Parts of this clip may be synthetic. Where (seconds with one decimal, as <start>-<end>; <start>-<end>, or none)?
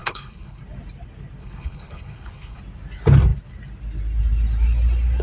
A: 0.0-0.6; 1.4-2.6